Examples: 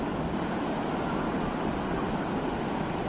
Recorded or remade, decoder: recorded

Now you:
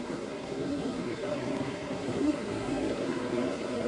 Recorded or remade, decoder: remade, codec, SNAC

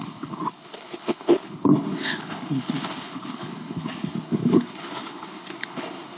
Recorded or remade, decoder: remade, codec, HILCodec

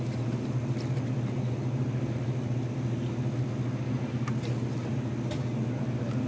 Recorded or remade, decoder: recorded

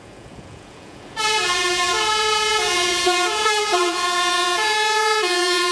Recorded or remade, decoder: remade, vocoder, Vocos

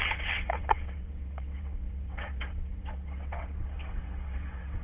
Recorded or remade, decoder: remade, vocoder, WaveNeXt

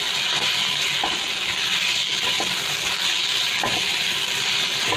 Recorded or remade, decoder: recorded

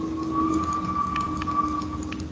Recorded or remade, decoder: recorded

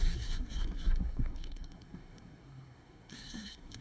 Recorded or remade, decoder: remade, codec, SNAC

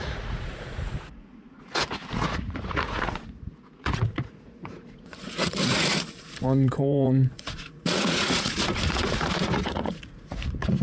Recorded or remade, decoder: remade, vocoder, Vocos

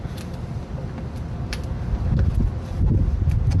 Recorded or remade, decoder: recorded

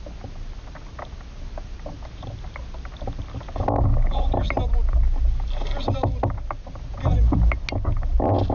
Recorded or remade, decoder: recorded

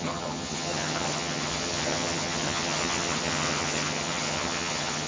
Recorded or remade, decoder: remade, vocoder, HiFi-GAN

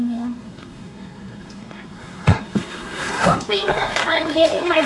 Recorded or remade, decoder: remade, codec, SNAC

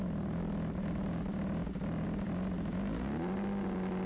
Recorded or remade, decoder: recorded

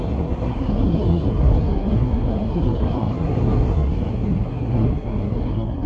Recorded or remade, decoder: remade, codec, SNAC